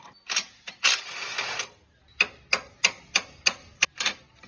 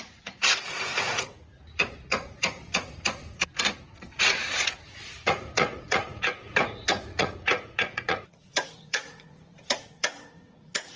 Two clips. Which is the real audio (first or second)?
first